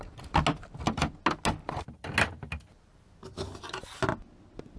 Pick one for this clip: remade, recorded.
recorded